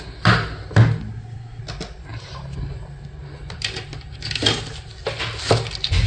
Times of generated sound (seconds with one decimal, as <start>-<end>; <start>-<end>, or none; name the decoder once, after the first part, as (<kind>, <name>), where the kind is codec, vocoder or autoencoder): 1.1-1.6 (codec, SNAC)